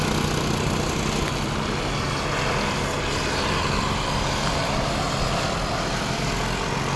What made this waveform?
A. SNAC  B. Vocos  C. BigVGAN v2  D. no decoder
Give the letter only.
D